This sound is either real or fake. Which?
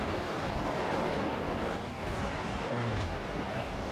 fake